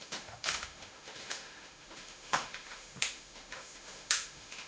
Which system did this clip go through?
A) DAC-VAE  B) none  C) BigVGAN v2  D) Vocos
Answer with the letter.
A